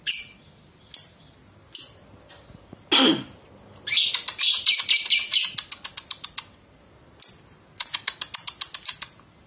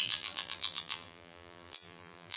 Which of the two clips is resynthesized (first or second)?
second